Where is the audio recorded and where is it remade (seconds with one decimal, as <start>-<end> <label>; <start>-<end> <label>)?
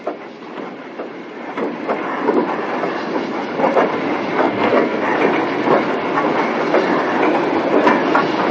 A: 0.0-4.4 recorded; 4.4-5.0 remade; 5.0-8.5 recorded